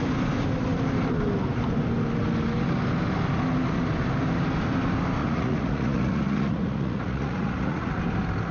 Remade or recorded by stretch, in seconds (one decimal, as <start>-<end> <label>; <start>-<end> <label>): 0.0-5.2 recorded; 5.2-8.0 remade; 8.0-8.5 recorded